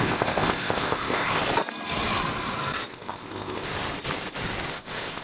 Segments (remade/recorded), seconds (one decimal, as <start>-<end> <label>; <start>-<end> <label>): 0.0-1.4 remade; 1.4-2.9 recorded; 2.9-3.7 remade; 3.7-4.7 recorded; 4.7-5.2 remade